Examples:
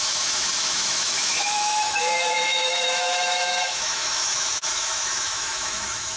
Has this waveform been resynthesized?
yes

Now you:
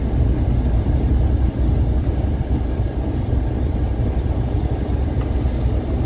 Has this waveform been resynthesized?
no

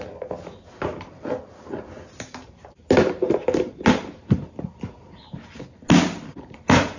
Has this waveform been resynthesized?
no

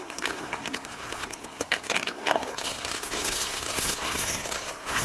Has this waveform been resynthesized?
yes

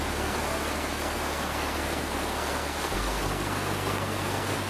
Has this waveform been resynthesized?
yes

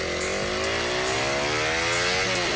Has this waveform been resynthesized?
no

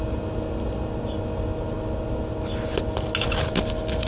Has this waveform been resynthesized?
no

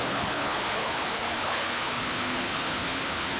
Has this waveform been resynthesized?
yes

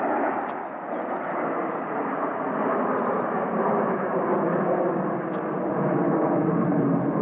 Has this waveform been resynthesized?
no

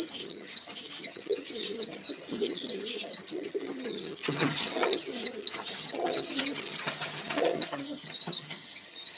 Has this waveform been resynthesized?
yes